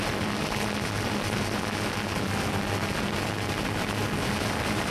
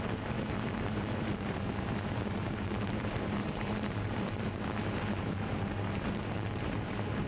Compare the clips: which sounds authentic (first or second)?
first